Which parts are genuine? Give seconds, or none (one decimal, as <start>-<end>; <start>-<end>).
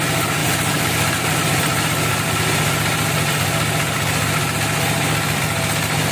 0.0-0.4; 1.3-6.1